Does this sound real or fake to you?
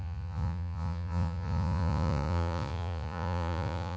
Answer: fake